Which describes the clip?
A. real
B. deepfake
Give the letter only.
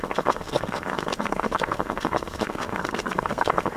B